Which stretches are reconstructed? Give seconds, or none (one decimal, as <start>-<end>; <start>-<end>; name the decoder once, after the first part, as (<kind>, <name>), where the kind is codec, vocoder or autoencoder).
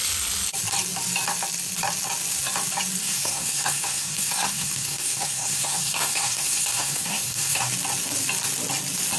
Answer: 3.0-7.7 (codec, SNAC)